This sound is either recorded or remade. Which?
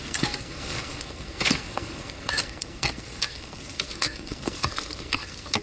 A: remade